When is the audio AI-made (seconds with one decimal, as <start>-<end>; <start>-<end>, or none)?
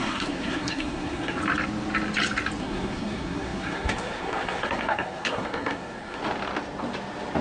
0.0-1.4; 2.6-6.2